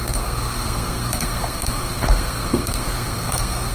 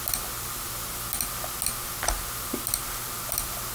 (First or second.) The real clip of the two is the second